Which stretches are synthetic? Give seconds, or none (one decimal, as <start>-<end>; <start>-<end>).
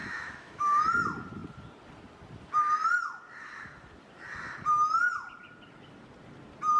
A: 0.0-0.8